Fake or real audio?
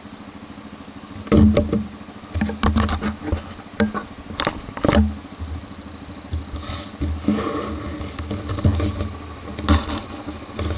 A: real